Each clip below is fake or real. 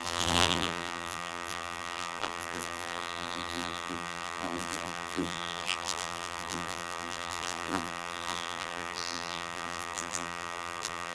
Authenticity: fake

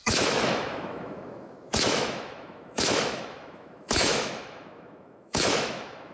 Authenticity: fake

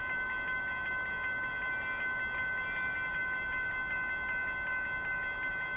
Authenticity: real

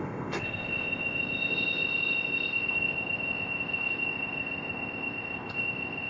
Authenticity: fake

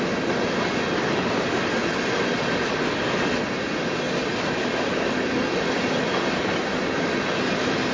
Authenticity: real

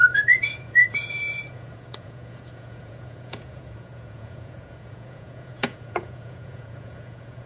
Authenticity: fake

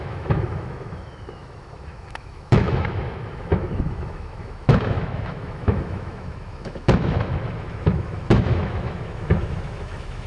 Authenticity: fake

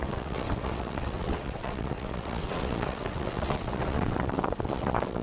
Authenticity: fake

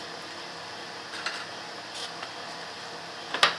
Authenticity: real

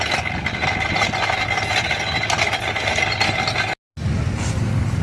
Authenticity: real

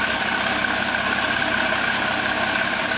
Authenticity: real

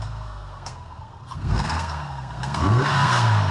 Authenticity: fake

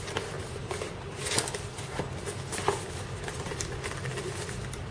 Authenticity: real